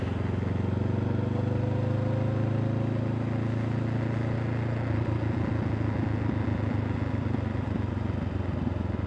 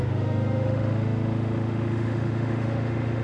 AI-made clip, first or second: second